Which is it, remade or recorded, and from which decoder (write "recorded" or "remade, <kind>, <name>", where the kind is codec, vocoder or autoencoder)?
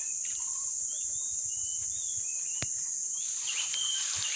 recorded